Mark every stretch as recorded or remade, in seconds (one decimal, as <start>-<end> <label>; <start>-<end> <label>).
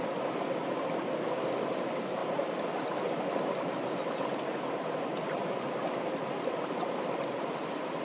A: 0.0-2.2 recorded; 2.2-6.0 remade; 6.0-8.0 recorded